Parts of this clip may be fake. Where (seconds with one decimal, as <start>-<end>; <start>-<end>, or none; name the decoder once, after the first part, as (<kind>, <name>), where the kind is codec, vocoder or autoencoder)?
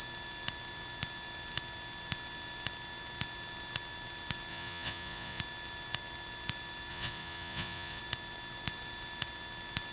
4.5-5.4 (vocoder, Vocos); 6.9-8.0